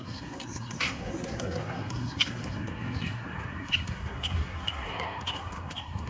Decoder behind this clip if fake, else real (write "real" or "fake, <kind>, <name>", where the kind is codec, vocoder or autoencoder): fake, codec, SNAC